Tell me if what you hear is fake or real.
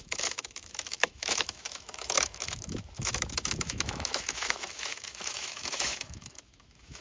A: fake